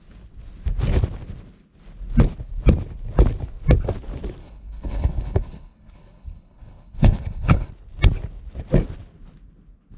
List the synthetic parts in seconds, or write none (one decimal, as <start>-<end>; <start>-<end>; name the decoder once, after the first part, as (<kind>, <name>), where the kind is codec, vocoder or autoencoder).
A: 4.4-7.7 (codec, HILCodec)